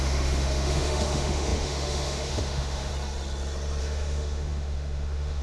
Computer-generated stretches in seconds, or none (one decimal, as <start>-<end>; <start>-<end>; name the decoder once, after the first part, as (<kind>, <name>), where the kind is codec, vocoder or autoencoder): 0.0-2.9 (autoencoder, DAC-VAE); 3.8-5.4

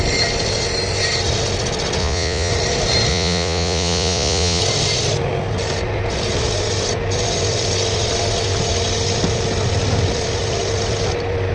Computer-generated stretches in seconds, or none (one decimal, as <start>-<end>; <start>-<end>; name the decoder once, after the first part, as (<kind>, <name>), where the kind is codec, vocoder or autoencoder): 2.0-2.5 (vocoder, Vocos); 3.1-4.6

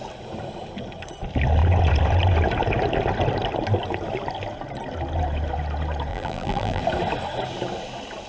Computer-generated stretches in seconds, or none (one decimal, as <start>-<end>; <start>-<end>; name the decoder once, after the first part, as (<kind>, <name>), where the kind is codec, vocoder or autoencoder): 6.1-6.8 (vocoder, BigVGAN v2)